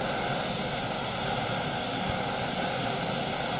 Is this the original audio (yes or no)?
yes